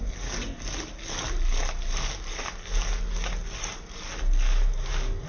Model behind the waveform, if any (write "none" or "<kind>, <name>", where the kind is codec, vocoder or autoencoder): none